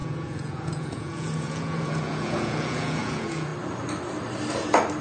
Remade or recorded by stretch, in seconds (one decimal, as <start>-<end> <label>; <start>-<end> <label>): 0.0-3.5 remade; 3.5-5.0 recorded